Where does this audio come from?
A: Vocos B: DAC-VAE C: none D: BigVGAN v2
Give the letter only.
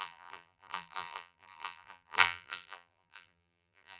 D